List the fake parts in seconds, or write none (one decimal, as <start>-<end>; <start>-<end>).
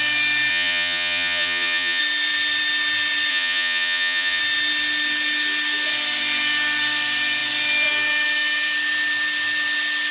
0.5-2.0; 3.3-4.4